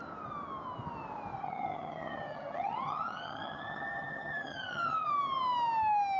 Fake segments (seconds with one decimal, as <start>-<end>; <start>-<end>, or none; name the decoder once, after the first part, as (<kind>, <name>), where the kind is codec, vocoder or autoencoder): 1.4-5.1 (vocoder, HiFi-GAN)